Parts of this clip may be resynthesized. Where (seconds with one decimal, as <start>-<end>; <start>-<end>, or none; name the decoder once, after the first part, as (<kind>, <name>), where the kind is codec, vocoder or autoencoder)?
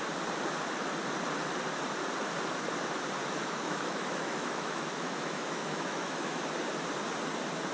3.4-6.4 (autoencoder, DAC-VAE)